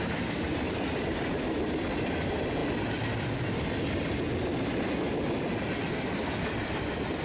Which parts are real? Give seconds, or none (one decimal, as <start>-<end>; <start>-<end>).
2.6-5.6